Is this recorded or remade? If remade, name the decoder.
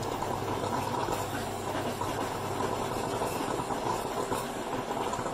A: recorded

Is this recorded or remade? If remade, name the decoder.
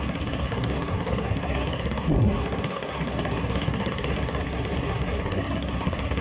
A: remade, codec, SNAC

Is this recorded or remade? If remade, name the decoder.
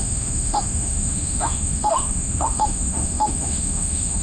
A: remade, autoencoder, DAC-VAE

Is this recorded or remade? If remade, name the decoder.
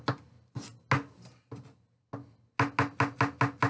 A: recorded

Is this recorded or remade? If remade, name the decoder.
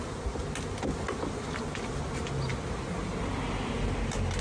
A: recorded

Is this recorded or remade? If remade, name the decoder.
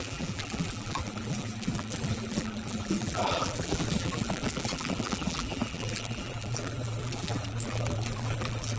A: remade, vocoder, BigVGAN v2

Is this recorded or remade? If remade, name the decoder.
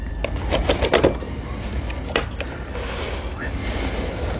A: recorded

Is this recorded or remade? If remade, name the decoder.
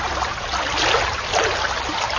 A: recorded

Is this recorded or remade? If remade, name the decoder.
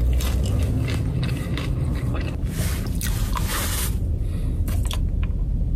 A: recorded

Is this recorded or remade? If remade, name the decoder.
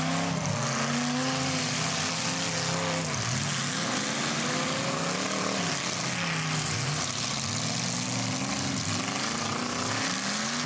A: recorded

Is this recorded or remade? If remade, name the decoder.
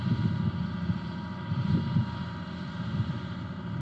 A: remade, vocoder, BigVGAN v2